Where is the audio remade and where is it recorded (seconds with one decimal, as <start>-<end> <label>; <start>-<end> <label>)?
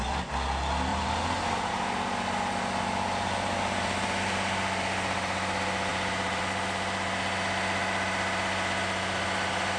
0.0-0.9 recorded; 0.9-1.7 remade; 1.7-5.9 recorded; 5.9-6.4 remade; 6.4-9.8 recorded